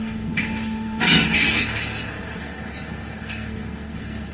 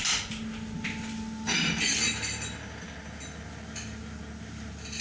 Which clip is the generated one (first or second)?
first